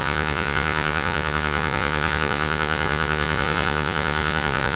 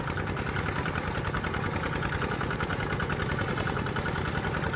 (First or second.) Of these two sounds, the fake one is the first